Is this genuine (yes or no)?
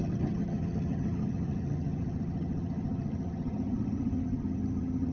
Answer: no